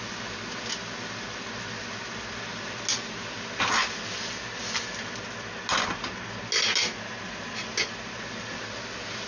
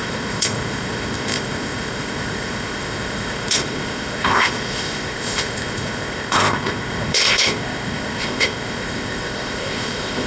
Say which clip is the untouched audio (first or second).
first